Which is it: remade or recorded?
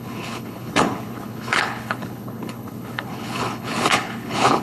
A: remade